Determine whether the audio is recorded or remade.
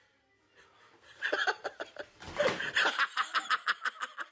recorded